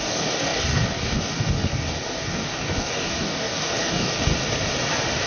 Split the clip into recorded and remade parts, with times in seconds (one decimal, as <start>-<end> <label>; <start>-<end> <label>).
0.0-4.3 remade; 4.3-5.3 recorded